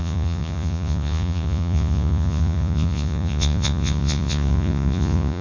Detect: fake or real fake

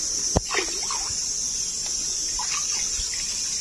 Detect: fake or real real